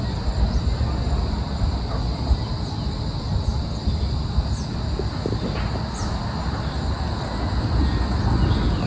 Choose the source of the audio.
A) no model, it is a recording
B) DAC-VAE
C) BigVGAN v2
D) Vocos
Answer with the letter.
A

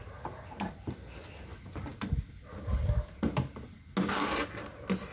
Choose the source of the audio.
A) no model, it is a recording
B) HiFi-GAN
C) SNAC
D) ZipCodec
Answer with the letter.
A